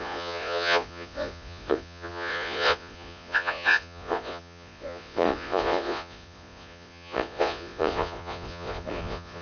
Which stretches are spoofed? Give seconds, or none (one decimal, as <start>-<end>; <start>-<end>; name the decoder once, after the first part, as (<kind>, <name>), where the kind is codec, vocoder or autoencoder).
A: 0.0-9.4 (vocoder, Vocos)